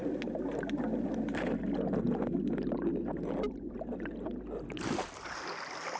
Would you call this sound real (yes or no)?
yes